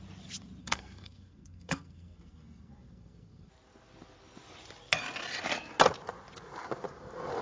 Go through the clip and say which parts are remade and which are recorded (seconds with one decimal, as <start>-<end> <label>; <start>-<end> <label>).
0.0-0.6 recorded; 0.6-3.5 remade; 3.5-7.4 recorded